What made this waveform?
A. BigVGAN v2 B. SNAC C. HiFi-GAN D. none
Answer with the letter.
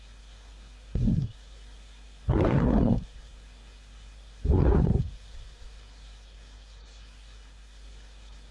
B